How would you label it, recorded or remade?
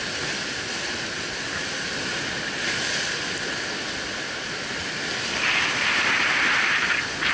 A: recorded